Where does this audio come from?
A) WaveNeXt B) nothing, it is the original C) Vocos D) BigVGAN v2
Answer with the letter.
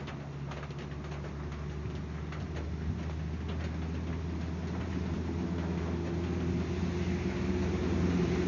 B